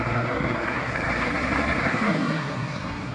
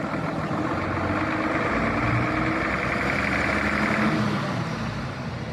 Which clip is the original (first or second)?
second